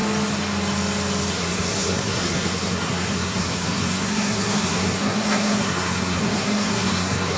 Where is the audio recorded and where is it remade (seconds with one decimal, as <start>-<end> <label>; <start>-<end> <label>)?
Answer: 0.0-1.3 recorded; 1.3-7.4 remade